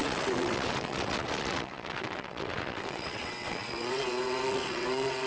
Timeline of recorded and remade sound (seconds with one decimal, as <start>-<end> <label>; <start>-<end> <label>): 0.0-5.3 remade